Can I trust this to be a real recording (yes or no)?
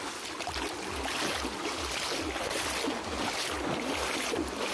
yes